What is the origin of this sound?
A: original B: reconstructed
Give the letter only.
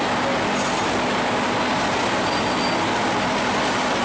A